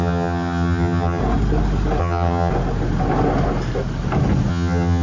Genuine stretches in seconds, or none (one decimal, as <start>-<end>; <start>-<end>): 1.2-2.0; 2.5-4.5